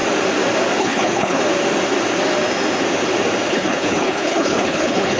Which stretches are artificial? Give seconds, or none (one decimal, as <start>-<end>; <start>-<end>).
0.8-1.4; 3.5-5.2